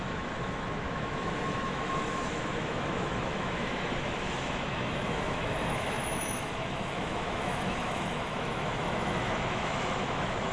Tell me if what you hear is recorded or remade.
remade